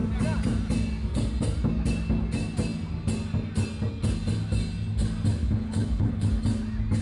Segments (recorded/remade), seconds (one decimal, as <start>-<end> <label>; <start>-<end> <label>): 0.0-5.4 recorded; 5.4-6.3 remade; 6.3-7.0 recorded